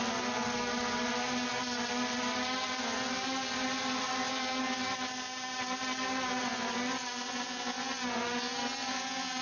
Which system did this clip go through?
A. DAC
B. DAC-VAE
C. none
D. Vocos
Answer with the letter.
C